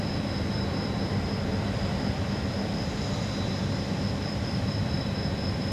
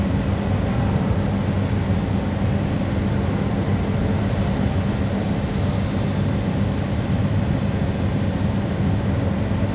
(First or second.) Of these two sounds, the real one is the second